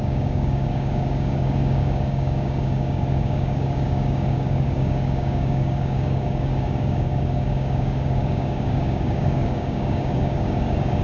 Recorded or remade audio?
remade